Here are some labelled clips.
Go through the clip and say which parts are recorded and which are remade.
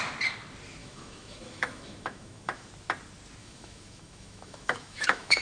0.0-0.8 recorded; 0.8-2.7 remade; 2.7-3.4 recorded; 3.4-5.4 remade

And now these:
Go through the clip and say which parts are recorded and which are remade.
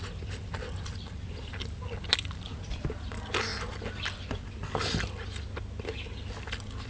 0.0-6.9 recorded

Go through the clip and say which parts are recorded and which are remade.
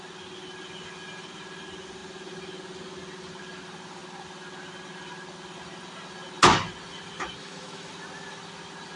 0.0-7.4 recorded; 7.4-7.9 remade; 7.9-9.0 recorded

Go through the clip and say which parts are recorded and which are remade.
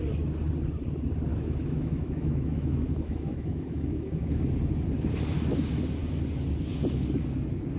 0.0-1.3 recorded; 1.3-4.4 remade; 4.4-7.8 recorded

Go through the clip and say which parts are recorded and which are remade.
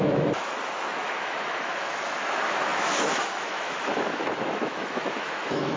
0.0-5.8 remade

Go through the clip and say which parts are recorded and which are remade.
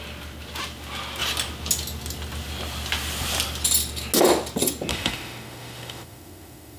0.0-4.9 recorded; 4.9-6.8 remade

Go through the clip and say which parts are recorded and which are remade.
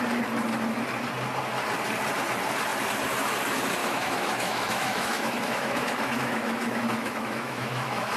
0.0-3.8 recorded; 3.8-8.2 remade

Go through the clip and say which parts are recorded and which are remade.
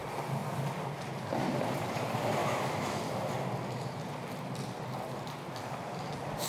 0.0-2.4 recorded; 2.4-3.0 remade; 3.0-6.5 recorded